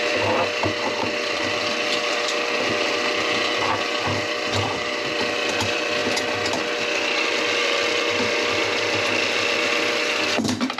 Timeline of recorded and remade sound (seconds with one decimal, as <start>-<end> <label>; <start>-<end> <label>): 0.0-10.8 recorded